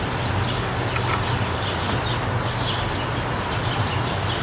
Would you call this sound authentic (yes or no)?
yes